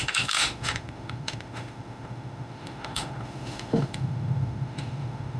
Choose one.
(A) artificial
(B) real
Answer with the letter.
A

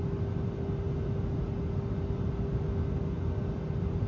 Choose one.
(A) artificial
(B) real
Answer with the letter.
B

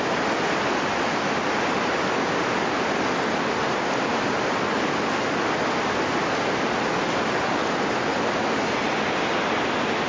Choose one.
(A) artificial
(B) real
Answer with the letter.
B